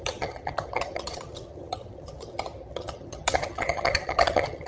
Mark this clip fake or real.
fake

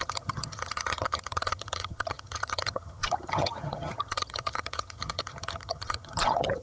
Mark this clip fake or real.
fake